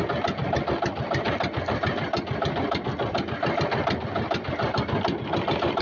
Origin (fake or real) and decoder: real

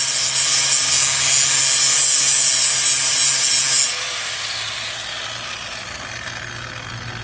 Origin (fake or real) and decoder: real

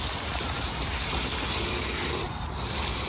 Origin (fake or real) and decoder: real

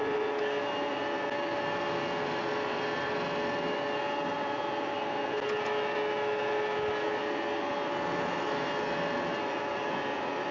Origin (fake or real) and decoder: real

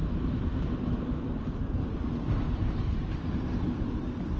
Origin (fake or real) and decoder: real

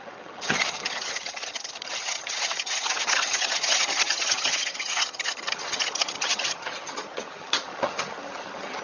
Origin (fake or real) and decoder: fake, vocoder, HiFi-GAN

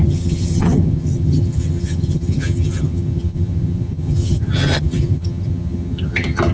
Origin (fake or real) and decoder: fake, vocoder, HiFi-GAN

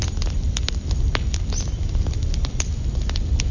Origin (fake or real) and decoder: real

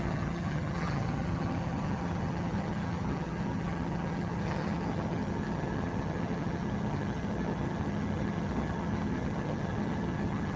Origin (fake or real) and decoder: fake, vocoder, HiFi-GAN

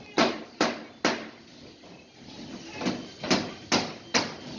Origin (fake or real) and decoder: real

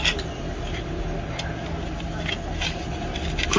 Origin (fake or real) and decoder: real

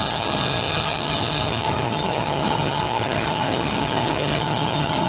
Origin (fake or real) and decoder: fake, vocoder, HiFi-GAN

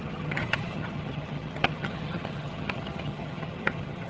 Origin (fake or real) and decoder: fake, vocoder, HiFi-GAN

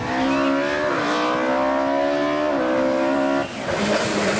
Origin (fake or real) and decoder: real